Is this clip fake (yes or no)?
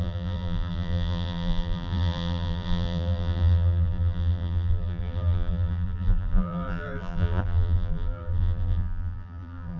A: yes